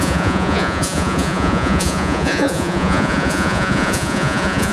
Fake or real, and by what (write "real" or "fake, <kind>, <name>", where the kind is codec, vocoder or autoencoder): fake, vocoder, Vocos